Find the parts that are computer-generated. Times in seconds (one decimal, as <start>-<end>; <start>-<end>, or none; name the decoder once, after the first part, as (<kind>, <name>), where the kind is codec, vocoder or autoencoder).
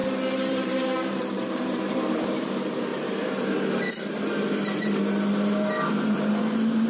0.5-2.9 (vocoder, BigVGAN v2); 5.9-6.9